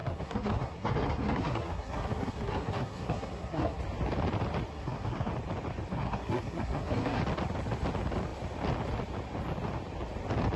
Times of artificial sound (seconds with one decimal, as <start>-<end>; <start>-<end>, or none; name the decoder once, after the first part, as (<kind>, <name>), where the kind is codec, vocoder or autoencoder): 0.0-3.8 (codec, SNAC); 4.7-5.3; 5.9-7.2